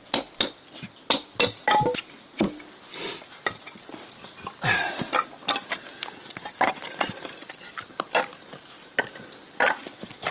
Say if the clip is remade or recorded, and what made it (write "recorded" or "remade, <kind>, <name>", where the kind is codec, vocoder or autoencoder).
recorded